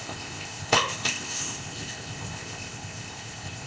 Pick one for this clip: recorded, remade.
remade